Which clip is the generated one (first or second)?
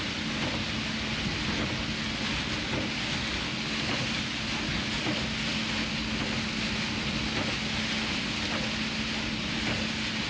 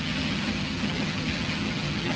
second